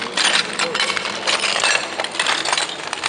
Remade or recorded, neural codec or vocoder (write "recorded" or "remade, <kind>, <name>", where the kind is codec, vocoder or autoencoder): remade, vocoder, BigVGAN v2